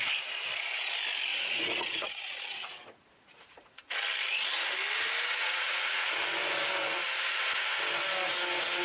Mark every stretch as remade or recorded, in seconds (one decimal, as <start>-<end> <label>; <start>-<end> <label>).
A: 0.0-1.3 recorded; 1.3-4.0 remade; 4.0-5.4 recorded; 5.4-6.1 remade; 6.1-8.8 recorded

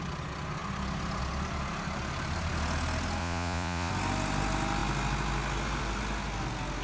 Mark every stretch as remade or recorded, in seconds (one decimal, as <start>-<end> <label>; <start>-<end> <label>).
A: 0.0-3.2 recorded; 3.2-3.9 remade; 3.9-6.8 recorded

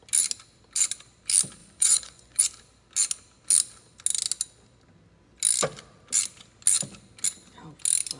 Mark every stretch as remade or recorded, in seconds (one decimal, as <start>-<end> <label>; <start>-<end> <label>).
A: 0.0-1.6 recorded; 1.6-2.4 remade; 2.4-8.2 recorded

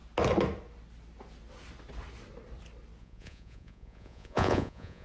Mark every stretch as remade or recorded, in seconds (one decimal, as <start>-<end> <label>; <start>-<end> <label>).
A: 0.0-3.0 recorded; 3.0-5.0 remade

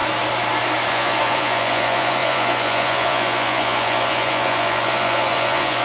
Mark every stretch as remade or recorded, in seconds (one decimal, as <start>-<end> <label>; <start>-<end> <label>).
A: 0.0-0.9 recorded; 0.9-5.8 remade